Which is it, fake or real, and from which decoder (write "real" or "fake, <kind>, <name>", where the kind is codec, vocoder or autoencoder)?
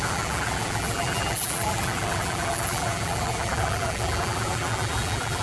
fake, vocoder, BigVGAN v2